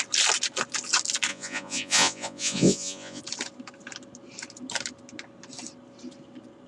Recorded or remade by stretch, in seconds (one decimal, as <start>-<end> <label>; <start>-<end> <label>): 0.0-1.3 recorded; 1.3-3.2 remade; 3.2-6.7 recorded

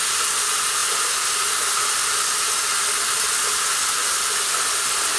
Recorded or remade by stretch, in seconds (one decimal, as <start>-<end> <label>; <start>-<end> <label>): 0.0-5.2 recorded

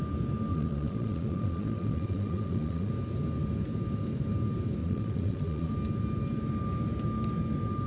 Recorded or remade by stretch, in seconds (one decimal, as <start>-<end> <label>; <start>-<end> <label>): 0.0-0.5 recorded; 0.5-2.9 remade; 2.9-4.8 recorded; 4.8-5.7 remade; 5.7-7.9 recorded

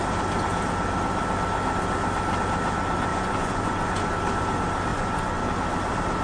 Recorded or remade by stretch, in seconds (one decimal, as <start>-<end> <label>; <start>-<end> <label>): 0.0-3.1 recorded; 3.1-4.1 remade; 4.1-4.9 recorded; 4.9-5.4 remade; 5.4-6.2 recorded

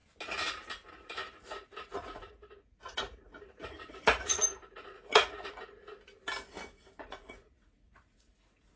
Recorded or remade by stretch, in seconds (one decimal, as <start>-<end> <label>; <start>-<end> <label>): 0.0-0.9 recorded; 0.9-5.8 remade; 5.8-7.0 recorded; 7.0-8.8 remade

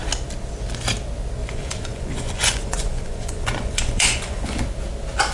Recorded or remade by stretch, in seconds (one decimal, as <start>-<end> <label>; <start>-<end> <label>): 0.0-1.4 recorded; 1.4-4.6 remade; 4.6-5.3 recorded